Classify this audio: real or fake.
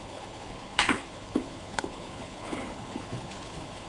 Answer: fake